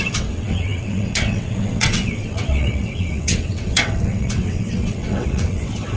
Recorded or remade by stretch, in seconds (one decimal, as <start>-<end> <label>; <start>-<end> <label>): 0.0-6.0 remade